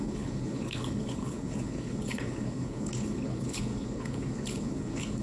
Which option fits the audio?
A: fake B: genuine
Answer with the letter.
A